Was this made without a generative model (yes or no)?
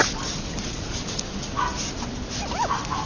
yes